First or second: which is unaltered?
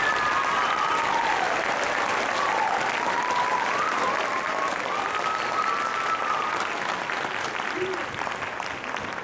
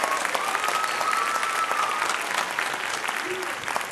second